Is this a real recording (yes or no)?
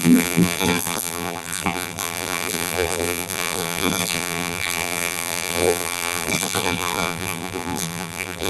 no